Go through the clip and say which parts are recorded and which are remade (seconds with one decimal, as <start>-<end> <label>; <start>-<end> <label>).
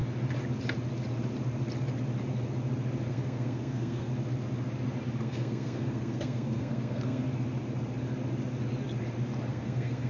0.0-3.1 recorded; 3.1-4.1 remade; 4.1-5.2 recorded; 5.2-7.2 remade; 7.2-9.5 recorded; 9.5-10.1 remade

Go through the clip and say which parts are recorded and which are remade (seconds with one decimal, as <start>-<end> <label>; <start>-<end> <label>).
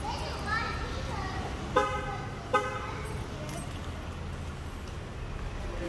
0.0-5.9 recorded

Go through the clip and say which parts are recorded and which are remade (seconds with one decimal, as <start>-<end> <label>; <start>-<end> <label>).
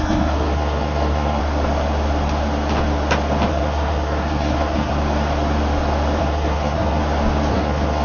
0.0-1.4 remade; 1.4-3.5 recorded; 3.5-4.9 remade; 4.9-6.2 recorded; 6.2-7.0 remade; 7.0-7.5 recorded; 7.5-8.0 remade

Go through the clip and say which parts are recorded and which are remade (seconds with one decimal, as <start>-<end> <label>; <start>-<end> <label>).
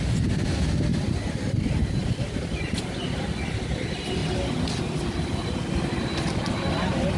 0.0-7.2 recorded